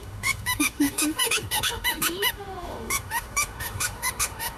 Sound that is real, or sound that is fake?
fake